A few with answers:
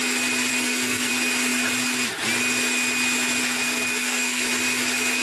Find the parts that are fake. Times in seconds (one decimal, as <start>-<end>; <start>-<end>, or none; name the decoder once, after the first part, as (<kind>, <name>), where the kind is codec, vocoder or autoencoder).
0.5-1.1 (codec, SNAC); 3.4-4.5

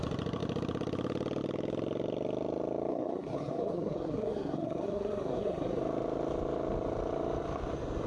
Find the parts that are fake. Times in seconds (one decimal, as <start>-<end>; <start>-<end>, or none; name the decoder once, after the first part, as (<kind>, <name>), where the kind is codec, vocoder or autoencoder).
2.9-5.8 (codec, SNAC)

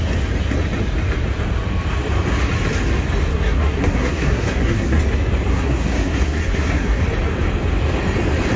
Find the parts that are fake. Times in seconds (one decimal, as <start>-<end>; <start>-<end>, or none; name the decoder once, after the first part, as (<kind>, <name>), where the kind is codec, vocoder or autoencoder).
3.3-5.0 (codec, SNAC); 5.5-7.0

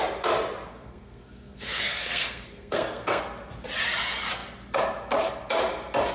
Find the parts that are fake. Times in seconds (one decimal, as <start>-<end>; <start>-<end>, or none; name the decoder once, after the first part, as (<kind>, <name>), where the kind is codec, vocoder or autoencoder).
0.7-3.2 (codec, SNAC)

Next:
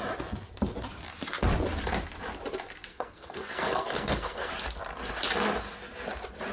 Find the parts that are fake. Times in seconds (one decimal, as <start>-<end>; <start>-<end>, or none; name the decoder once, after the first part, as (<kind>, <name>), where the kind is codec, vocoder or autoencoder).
2.9-4.5 (codec, SNAC)

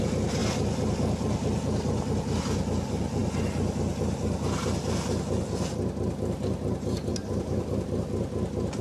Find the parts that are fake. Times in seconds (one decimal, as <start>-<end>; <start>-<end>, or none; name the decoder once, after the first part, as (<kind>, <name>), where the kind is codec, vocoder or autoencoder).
none

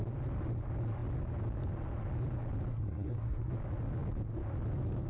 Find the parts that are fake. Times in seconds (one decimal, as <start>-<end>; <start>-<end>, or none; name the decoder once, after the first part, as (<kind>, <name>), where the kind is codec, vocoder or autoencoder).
2.7-3.5 (codec, SNAC)